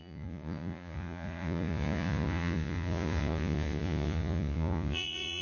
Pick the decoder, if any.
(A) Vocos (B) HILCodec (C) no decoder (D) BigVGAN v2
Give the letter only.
A